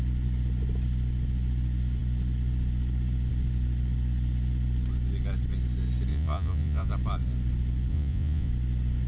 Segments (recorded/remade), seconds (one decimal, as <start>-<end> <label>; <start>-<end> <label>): 0.0-6.1 recorded; 6.1-6.9 remade; 6.9-7.9 recorded; 7.9-8.5 remade; 8.5-9.1 recorded